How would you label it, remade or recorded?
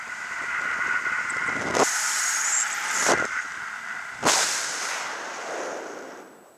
remade